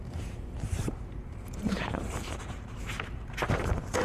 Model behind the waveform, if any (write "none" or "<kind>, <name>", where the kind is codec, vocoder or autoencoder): vocoder, BigVGAN v2